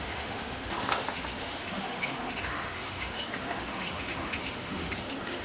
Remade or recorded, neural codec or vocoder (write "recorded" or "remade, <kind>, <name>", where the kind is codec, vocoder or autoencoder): remade, autoencoder, DAC-VAE